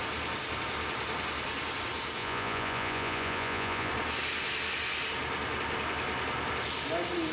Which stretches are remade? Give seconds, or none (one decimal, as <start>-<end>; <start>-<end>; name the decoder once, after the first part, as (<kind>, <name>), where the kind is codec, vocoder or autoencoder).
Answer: 2.2-3.9 (vocoder, Vocos)